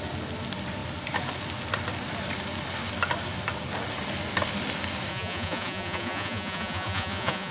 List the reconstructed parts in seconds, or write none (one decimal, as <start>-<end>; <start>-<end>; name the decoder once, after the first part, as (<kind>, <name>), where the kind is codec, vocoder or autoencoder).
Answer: 5.1-7.5 (vocoder, Vocos)